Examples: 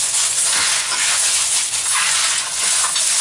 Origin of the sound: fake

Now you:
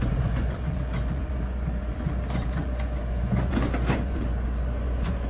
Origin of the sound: fake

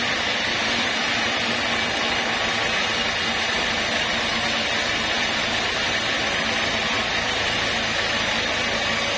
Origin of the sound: real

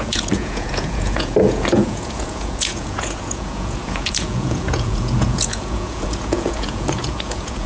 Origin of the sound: fake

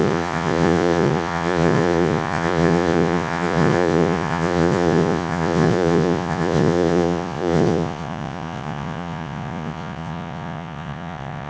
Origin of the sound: fake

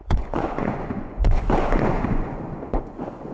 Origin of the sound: fake